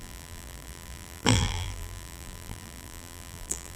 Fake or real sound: fake